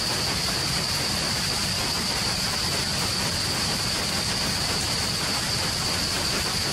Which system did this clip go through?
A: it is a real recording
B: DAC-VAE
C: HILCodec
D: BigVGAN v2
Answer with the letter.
A